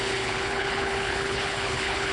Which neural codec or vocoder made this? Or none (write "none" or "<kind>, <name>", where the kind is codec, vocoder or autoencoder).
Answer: codec, HILCodec